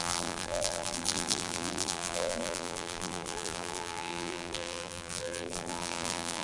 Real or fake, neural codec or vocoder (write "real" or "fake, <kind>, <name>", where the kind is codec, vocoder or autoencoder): fake, vocoder, BigVGAN v2